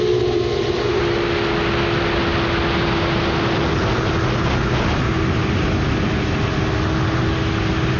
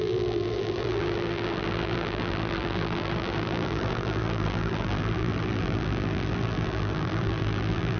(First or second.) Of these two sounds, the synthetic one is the second